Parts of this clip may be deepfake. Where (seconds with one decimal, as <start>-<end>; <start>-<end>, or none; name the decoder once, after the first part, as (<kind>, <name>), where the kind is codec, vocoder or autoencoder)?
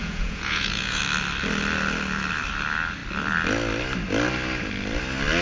0.0-1.0 (vocoder, Vocos)